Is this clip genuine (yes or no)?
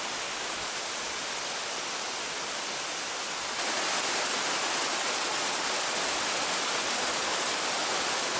yes